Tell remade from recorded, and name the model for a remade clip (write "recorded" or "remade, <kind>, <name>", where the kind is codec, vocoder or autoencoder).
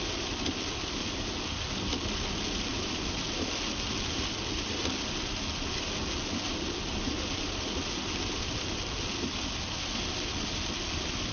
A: recorded